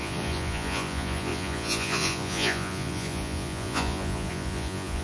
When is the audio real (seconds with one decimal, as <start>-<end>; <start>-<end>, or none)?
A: none